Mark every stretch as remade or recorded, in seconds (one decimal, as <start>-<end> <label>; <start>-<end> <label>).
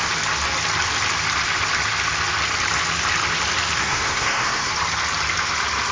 0.0-3.8 recorded; 3.8-4.7 remade; 4.7-5.9 recorded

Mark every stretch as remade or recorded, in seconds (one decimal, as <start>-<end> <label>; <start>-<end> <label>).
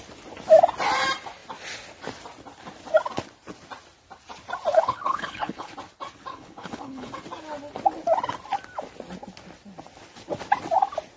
0.0-4.7 recorded; 4.7-5.7 remade; 5.7-6.3 recorded; 6.3-7.1 remade; 7.1-11.2 recorded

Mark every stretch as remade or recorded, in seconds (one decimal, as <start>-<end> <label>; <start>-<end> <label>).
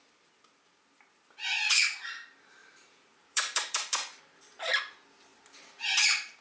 0.0-2.6 recorded; 2.6-4.2 remade; 4.2-6.4 recorded